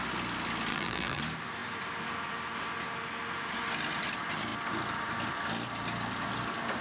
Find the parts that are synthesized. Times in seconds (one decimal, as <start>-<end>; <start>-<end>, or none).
0.7-1.2